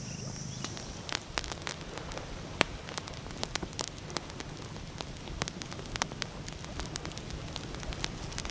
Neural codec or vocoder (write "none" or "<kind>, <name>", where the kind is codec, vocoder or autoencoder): none